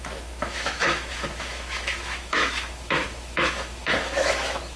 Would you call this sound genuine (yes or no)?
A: no